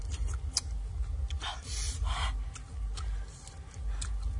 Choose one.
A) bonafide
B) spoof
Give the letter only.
A